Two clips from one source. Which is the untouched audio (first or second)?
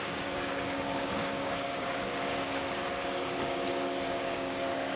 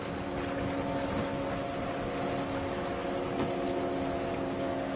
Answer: second